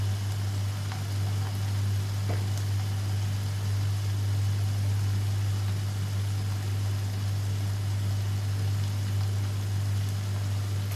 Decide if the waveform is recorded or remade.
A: recorded